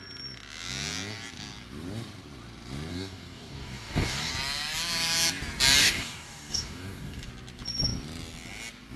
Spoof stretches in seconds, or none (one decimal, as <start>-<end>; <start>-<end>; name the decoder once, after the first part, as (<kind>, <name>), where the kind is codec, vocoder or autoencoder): 2.9-4.3 (codec, DAC); 5.8-7.3